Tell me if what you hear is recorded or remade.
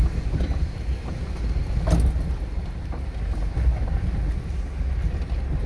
recorded